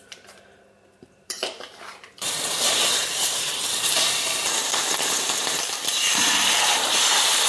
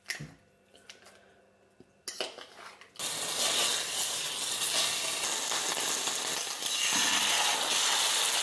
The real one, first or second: second